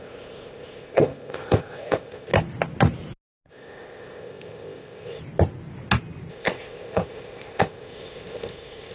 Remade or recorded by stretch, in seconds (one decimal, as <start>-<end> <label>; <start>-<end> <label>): 0.0-2.3 remade; 2.3-3.5 recorded; 3.5-5.2 remade; 5.2-6.3 recorded; 6.3-8.9 remade